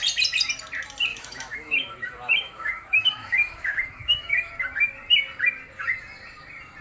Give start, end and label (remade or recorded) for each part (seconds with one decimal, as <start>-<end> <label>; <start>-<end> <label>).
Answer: 0.0-1.1 recorded; 1.1-4.5 remade; 4.5-6.8 recorded